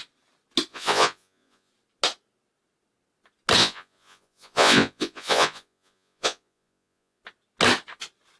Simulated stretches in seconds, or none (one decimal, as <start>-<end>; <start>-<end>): 0.7-1.7; 3.6-7.2